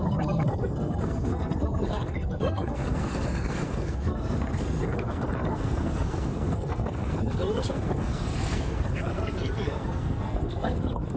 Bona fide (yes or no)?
no